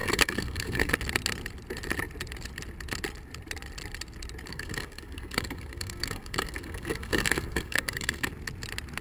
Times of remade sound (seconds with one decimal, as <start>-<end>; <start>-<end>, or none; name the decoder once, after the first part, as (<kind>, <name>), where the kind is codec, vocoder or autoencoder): 0.0-0.9 (codec, SNAC); 4.5-8.3